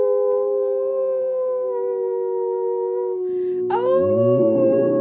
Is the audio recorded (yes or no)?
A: yes